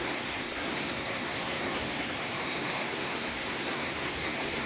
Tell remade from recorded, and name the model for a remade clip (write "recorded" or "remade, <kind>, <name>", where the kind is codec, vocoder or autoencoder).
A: remade, codec, SNAC